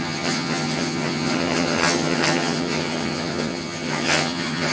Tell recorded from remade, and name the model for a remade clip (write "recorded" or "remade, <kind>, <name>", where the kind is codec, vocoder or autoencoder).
remade, vocoder, HiFi-GAN